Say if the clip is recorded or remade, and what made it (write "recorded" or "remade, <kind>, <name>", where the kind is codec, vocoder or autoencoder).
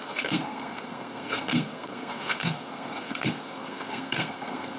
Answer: remade, codec, SNAC